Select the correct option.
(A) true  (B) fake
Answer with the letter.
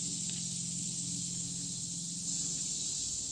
A